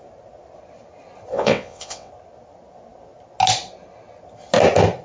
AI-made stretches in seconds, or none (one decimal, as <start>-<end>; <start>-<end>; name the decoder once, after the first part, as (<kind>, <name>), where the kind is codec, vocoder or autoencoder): 1.3-2.1 (vocoder, WaveNeXt)